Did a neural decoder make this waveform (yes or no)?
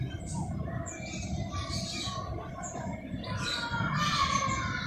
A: no